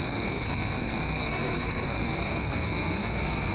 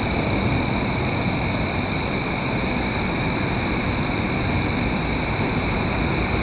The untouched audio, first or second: second